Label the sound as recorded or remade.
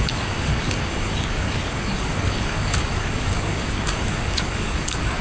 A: remade